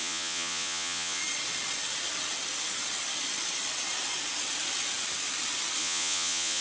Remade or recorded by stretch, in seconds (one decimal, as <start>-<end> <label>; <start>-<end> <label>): 0.0-1.2 remade; 1.2-5.8 recorded; 5.8-6.6 remade